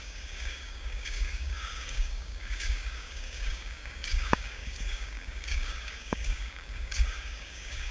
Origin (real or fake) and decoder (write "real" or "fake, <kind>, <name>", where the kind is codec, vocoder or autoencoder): fake, codec, DAC